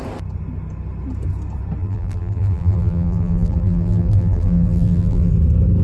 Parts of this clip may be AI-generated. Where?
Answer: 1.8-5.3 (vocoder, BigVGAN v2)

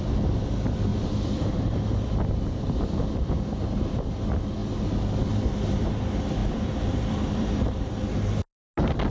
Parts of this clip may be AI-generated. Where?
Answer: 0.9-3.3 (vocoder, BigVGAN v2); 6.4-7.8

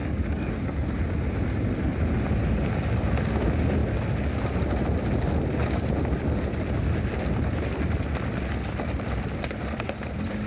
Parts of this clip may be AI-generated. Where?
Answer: 0.0-0.5 (codec, DAC)

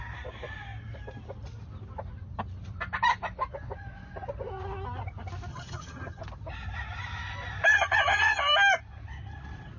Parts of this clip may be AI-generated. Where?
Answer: 5.5-6.2 (vocoder, HiFi-GAN); 7.7-8.4